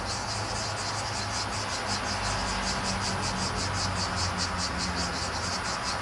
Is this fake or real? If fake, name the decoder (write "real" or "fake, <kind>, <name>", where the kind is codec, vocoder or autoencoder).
real